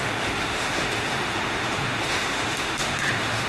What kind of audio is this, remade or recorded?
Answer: remade